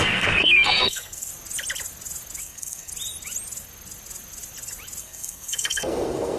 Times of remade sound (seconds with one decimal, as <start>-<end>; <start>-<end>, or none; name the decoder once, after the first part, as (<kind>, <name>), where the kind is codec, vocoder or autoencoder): 0.0-1.3 (codec, SNAC); 2.4-2.9; 5.0-6.4